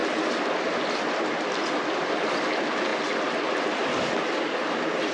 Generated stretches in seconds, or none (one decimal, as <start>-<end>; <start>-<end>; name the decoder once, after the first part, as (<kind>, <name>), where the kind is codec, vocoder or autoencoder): none